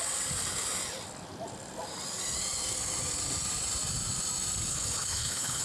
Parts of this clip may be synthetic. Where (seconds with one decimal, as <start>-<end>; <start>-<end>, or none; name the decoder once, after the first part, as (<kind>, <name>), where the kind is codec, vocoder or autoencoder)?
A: 4.7-5.6 (codec, HILCodec)